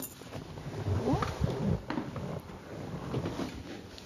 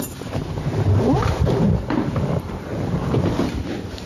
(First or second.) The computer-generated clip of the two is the second